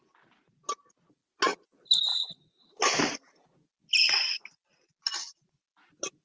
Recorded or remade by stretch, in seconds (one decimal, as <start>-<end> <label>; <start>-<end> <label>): 0.0-6.2 recorded